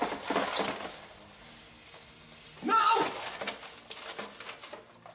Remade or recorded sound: recorded